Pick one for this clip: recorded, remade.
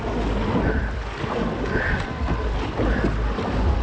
recorded